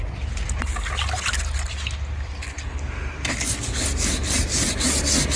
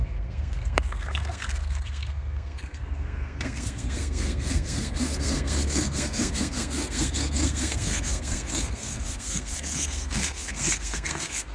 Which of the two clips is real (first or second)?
first